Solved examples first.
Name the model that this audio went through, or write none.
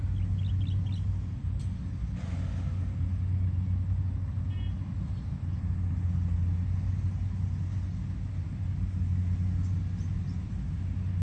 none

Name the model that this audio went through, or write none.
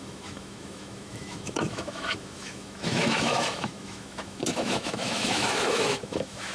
autoencoder, DAC-VAE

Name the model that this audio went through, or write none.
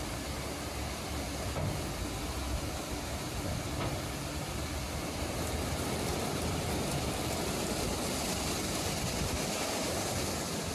none